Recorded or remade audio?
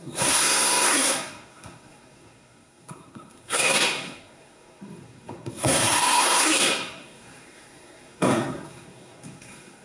remade